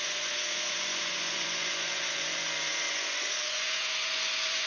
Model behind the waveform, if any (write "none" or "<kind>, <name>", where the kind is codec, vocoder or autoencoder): vocoder, Vocos